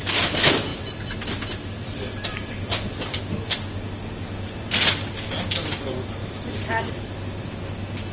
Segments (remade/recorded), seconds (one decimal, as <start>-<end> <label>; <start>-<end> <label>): 0.0-0.7 recorded; 0.7-3.2 remade; 3.2-6.2 recorded; 6.2-6.9 remade; 6.9-8.1 recorded

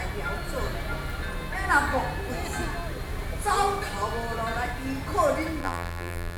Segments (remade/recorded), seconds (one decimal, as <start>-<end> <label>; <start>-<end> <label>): 0.0-5.6 recorded; 5.6-6.4 remade

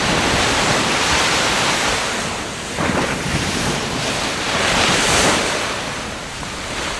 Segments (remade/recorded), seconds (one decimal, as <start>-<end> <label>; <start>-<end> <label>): 0.0-3.3 recorded; 3.3-6.4 remade; 6.4-7.0 recorded

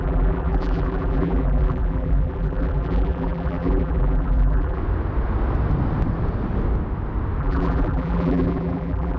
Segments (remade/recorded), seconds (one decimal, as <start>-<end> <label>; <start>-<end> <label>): 0.0-4.8 remade; 4.8-7.4 recorded; 7.4-9.2 remade